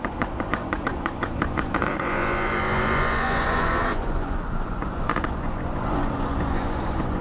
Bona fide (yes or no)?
no